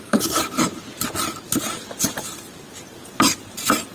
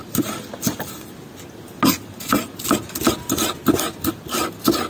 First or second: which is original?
second